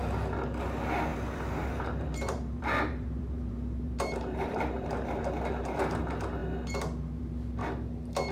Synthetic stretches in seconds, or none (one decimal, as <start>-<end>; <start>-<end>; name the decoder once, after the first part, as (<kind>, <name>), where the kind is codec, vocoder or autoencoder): 1.1-6.0 (vocoder, BigVGAN v2)